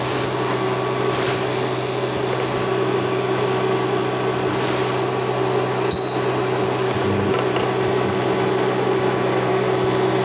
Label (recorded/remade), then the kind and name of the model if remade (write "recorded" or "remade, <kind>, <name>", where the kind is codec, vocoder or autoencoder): recorded